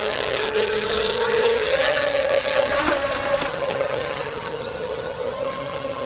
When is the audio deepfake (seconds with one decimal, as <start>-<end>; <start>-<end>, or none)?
0.0-2.7; 3.5-6.1